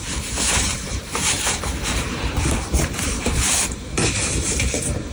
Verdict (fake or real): fake